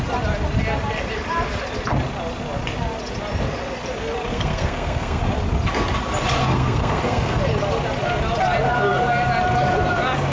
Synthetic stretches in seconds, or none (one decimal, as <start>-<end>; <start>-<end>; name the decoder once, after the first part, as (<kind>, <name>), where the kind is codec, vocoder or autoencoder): 4.3-5.2 (codec, SNAC); 6.4-7.4

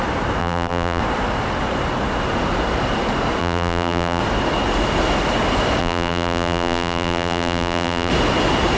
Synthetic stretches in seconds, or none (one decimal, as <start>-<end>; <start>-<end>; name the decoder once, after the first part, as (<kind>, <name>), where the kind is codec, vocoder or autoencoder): 0.4-1.0 (vocoder, BigVGAN v2); 3.4-4.2; 5.8-8.1